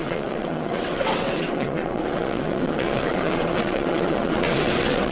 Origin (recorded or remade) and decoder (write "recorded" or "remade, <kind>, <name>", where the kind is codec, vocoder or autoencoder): remade, vocoder, WaveNeXt